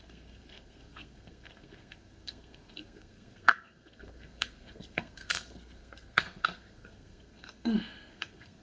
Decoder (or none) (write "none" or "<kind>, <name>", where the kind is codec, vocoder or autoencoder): codec, SNAC